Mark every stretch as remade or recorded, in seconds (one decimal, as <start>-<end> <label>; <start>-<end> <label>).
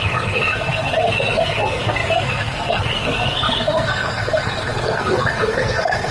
0.0-6.1 remade